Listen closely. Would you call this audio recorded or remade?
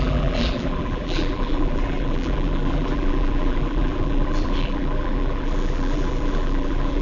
remade